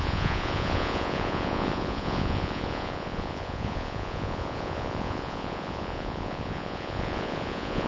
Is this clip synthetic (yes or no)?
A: yes